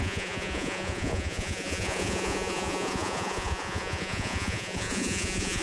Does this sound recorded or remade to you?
remade